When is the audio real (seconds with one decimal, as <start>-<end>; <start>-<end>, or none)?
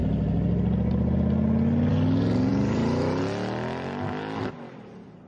0.0-2.5; 3.2-5.3